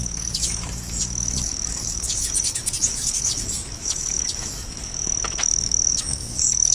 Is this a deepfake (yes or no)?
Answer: yes